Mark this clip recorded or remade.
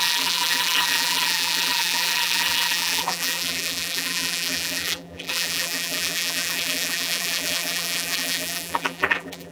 remade